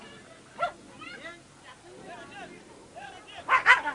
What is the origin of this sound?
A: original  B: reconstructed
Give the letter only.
A